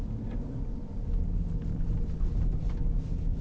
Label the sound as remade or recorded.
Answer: recorded